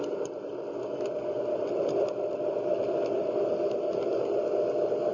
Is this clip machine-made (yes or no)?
no